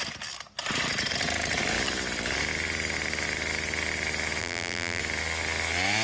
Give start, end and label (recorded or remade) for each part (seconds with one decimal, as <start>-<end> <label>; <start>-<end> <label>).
0.0-4.4 recorded; 4.4-5.0 remade; 5.0-6.0 recorded